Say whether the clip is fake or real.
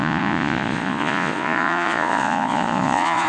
fake